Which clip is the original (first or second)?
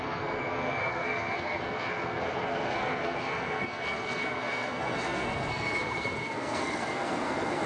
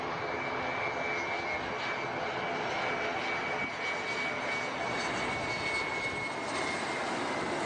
second